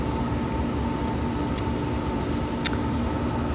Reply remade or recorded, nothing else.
recorded